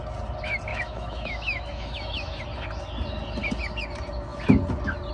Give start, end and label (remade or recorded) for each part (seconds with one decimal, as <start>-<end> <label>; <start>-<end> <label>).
0.0-0.7 recorded; 0.7-2.4 remade; 2.4-5.1 recorded